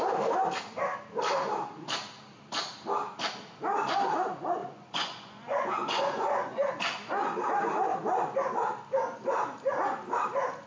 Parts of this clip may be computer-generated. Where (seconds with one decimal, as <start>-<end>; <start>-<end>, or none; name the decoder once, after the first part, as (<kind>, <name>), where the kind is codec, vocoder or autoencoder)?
4.6-6.7 (vocoder, Vocos)